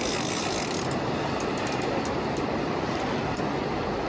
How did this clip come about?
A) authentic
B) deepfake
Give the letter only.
A